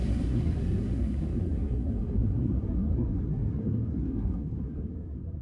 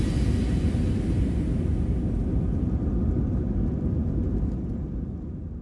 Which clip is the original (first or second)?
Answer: second